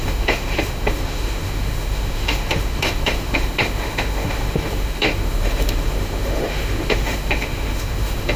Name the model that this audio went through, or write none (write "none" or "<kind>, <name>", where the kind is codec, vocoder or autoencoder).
autoencoder, DAC-VAE